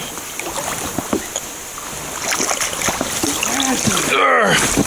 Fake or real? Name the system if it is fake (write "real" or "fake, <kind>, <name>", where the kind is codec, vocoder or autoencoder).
real